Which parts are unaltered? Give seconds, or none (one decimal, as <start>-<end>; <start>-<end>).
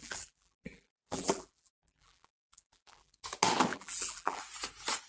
3.1-3.7; 4.4-5.1